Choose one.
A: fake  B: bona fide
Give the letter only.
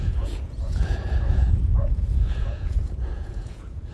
A